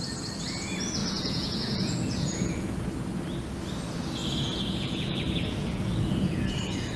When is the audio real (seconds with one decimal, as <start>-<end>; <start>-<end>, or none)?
0.0-1.0; 2.8-4.2

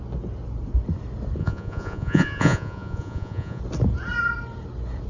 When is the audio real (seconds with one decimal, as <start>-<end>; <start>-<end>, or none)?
0.0-1.4; 3.6-5.1

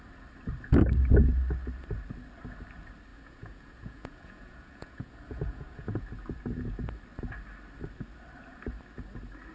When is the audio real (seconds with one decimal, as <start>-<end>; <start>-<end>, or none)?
0.0-3.1; 6.0-9.5

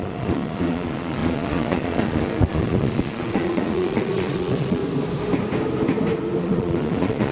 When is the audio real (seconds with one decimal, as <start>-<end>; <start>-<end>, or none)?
4.8-6.4